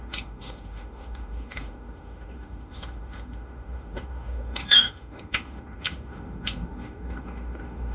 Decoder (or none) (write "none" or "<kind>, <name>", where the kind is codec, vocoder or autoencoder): autoencoder, DAC-VAE